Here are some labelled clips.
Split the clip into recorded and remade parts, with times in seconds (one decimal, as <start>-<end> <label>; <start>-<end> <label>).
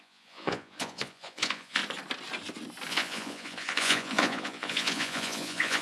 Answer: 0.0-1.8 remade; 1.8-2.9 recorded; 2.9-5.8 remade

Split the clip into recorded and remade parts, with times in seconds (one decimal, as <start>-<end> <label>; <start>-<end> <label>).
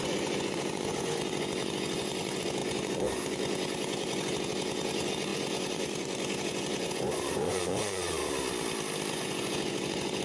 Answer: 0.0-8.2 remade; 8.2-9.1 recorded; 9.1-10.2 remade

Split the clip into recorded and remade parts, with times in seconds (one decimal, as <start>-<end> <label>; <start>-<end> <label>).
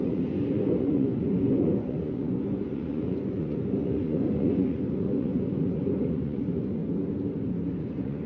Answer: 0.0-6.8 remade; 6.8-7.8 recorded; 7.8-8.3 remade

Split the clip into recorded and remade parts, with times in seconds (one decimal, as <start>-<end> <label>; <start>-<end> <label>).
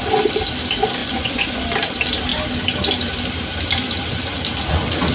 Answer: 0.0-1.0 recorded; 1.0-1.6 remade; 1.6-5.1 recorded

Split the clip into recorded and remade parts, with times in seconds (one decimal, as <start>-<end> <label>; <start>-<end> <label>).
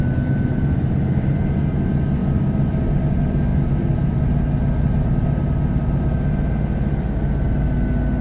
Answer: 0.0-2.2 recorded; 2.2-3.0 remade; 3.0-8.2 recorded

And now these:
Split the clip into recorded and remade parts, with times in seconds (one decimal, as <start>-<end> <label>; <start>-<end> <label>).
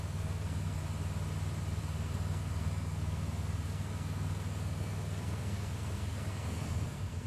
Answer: 0.0-0.8 remade; 0.8-1.8 recorded; 1.8-7.3 remade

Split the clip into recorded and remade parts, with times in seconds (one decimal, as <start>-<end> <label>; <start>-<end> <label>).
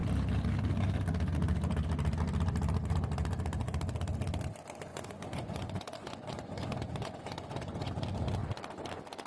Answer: 0.0-4.9 recorded; 4.9-7.9 remade; 7.9-9.3 recorded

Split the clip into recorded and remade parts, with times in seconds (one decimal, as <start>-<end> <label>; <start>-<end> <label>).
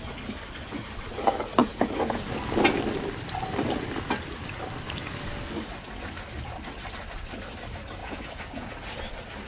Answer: 0.0-1.6 recorded; 1.6-2.2 remade; 2.2-8.0 recorded; 8.0-8.7 remade; 8.7-9.5 recorded